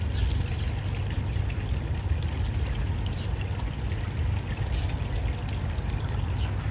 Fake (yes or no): no